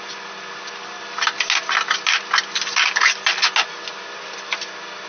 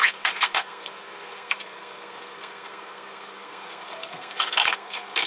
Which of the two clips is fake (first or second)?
second